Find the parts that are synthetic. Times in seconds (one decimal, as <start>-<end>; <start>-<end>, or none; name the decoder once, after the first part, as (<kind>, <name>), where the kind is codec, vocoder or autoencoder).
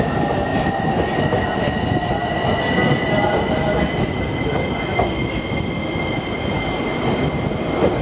none